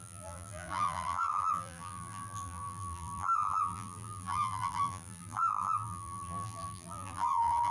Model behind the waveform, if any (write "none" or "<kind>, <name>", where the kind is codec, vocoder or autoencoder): vocoder, BigVGAN v2